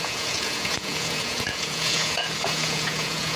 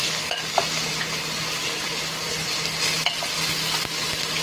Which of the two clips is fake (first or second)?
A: first